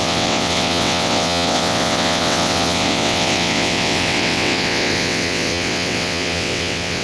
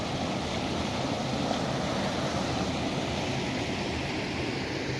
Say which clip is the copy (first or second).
first